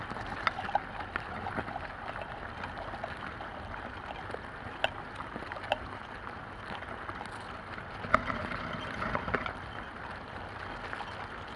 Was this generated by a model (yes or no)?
no